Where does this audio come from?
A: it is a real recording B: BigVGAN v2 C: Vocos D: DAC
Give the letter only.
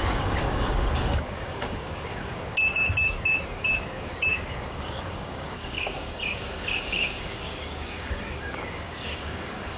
D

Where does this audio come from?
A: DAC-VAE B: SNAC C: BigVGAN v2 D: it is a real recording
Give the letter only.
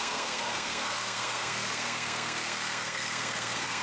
B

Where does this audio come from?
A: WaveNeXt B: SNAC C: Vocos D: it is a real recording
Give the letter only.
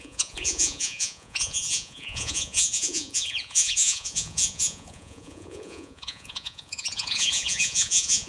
C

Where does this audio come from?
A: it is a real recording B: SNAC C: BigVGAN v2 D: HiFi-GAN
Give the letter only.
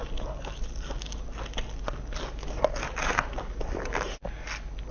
A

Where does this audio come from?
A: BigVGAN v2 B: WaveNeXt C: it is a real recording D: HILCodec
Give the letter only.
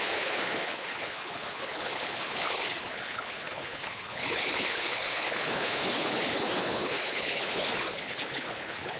D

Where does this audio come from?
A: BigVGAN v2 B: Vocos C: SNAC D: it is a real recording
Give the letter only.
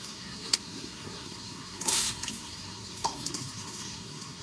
C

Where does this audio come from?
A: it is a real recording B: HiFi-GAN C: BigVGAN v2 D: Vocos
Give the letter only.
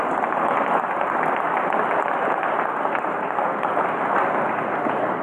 A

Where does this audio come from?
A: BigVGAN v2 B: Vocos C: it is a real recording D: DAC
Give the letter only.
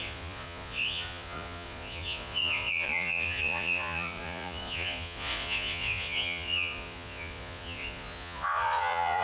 B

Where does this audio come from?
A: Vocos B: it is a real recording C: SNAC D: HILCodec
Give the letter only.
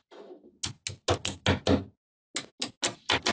B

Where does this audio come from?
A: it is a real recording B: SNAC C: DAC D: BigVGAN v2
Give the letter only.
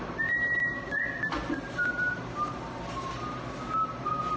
A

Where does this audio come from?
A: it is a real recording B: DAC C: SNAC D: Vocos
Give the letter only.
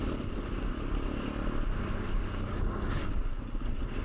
A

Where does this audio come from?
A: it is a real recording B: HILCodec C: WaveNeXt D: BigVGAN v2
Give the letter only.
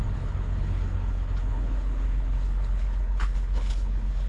B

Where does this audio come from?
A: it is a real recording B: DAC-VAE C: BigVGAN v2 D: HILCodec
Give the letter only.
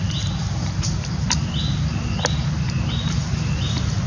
A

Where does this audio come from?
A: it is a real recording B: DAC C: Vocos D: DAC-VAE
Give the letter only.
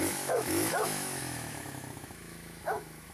D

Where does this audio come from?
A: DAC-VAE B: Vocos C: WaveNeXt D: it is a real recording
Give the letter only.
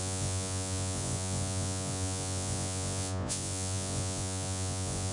B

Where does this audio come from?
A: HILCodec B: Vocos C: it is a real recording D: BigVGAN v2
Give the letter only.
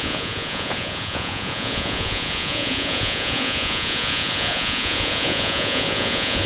B